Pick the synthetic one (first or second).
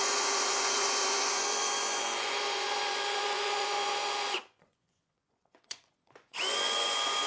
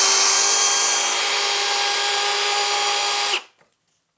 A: first